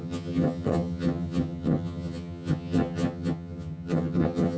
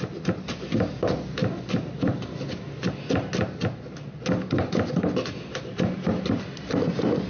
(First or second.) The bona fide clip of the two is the second